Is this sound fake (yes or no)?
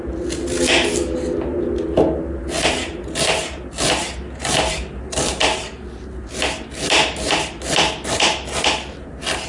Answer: no